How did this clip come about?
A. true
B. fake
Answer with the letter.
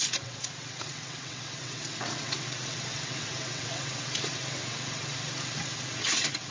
B